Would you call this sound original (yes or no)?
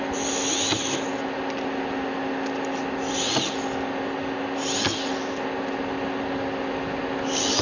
yes